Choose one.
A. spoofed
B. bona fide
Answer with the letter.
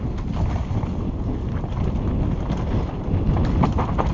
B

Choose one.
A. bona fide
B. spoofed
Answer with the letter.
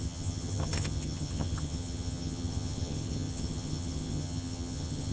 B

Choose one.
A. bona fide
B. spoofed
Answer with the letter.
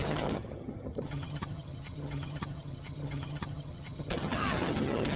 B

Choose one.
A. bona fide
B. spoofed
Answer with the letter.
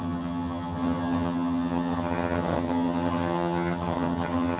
B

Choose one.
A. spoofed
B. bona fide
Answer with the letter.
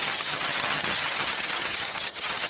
A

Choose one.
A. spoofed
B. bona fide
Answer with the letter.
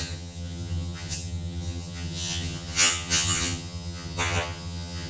A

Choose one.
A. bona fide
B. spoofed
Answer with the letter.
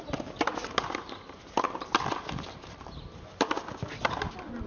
A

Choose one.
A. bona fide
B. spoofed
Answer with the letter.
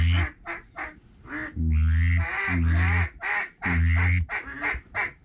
A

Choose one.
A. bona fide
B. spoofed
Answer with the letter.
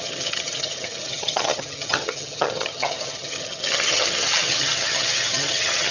B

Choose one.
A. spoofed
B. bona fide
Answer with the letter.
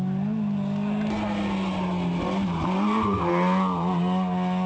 B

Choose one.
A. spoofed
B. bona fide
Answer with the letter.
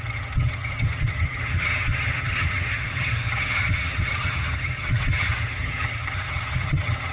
A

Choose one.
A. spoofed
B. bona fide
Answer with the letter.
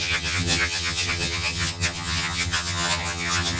A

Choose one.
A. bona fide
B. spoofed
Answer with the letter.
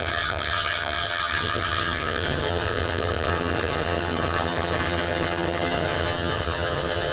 B